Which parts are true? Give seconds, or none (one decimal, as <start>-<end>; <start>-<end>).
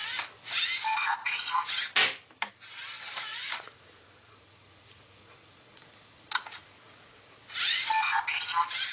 0.0-1.2; 1.8-3.4; 7.4-8.9